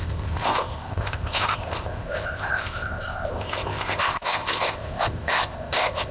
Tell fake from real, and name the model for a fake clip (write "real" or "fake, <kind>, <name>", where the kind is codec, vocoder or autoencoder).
fake, codec, ZipCodec